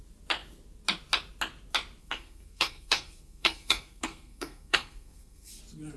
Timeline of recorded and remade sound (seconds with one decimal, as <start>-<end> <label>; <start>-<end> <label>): 0.0-2.0 recorded; 2.0-5.6 remade; 5.6-6.0 recorded